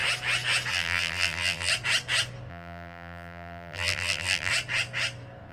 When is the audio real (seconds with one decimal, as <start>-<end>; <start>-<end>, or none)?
0.0-0.7; 1.7-2.5; 4.5-5.5